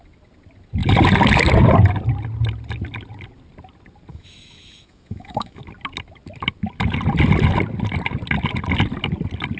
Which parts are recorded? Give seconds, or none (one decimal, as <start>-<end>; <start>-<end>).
0.0-4.1; 5.6-9.6